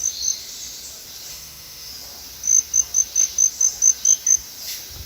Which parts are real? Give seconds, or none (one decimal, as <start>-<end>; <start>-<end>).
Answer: 0.0-1.3; 1.9-5.1